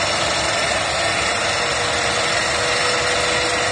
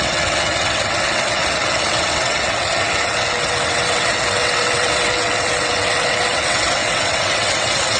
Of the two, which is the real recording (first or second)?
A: first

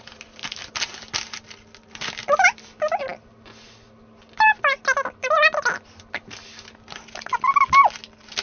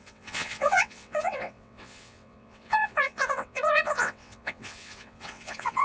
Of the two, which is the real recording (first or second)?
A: first